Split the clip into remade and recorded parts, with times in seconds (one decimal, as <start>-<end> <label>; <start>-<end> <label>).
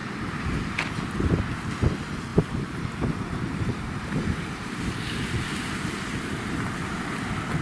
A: 0.0-2.3 recorded; 2.3-5.6 remade; 5.6-7.6 recorded